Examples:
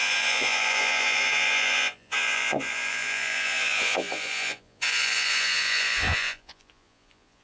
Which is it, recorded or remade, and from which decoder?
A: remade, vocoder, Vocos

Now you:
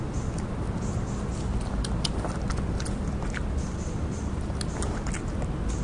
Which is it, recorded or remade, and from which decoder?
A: recorded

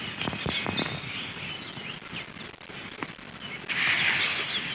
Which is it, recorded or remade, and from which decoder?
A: recorded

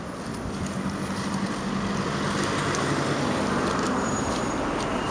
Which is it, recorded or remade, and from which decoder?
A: recorded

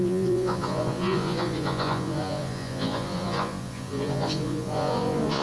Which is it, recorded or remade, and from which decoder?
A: remade, vocoder, Vocos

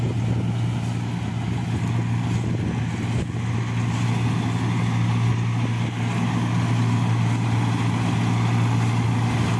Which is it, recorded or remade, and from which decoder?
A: recorded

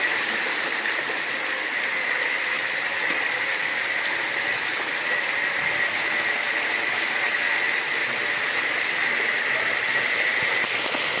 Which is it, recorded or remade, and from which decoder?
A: recorded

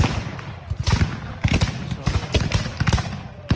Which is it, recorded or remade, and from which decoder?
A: recorded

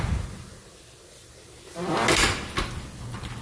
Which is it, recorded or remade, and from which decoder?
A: recorded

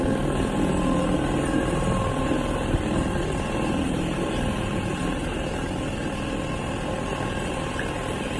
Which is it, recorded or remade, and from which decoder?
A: recorded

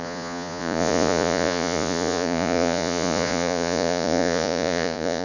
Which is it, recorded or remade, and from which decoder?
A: remade, vocoder, Vocos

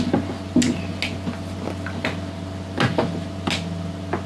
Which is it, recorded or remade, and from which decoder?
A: recorded